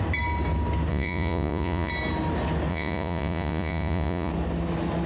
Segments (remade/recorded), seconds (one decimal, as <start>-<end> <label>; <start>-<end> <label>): 0.0-0.9 recorded; 0.9-1.9 remade; 1.9-2.7 recorded; 2.7-4.3 remade; 4.3-5.1 recorded